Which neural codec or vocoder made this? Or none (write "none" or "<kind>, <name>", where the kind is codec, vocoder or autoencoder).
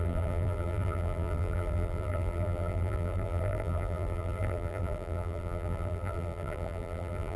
vocoder, BigVGAN v2